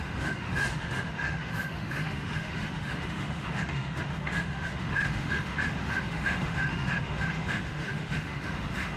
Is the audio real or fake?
fake